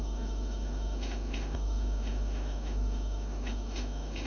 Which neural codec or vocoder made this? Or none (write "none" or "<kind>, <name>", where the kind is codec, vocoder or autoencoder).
autoencoder, DAC-VAE